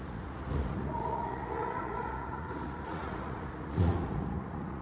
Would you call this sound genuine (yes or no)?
no